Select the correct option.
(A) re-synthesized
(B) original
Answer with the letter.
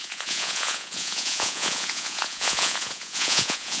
A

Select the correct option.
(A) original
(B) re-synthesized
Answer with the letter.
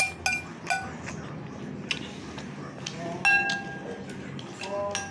A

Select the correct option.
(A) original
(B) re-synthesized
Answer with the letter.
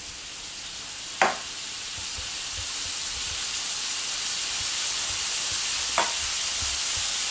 A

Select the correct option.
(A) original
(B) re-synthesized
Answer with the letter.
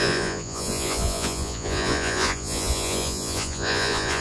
B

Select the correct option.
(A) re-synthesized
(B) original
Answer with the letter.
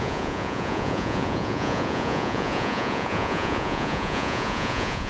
A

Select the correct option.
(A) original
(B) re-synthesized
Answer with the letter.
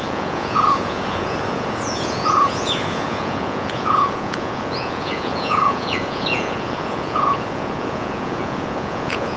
B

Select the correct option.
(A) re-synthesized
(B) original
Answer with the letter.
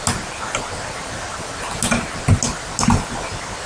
B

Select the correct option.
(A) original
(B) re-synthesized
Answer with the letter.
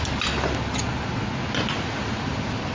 A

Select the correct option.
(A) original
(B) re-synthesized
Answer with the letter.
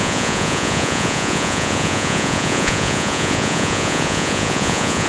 B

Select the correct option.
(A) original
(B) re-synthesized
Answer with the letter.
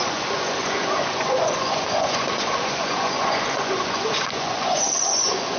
B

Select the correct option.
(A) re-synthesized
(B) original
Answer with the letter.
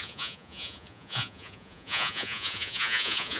A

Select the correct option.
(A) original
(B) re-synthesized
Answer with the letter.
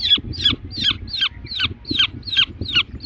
A